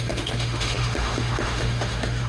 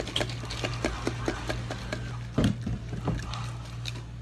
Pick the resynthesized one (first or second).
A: first